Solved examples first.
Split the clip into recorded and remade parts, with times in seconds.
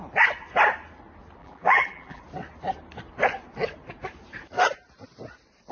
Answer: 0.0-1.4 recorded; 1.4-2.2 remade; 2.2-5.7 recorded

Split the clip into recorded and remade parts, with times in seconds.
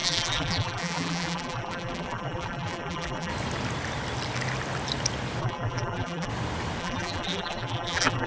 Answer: 0.0-3.3 remade; 3.3-5.4 recorded; 5.4-6.3 remade; 6.3-6.8 recorded; 6.8-8.3 remade